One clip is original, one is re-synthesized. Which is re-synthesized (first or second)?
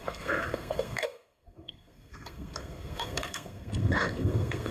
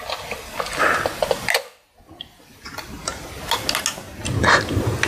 first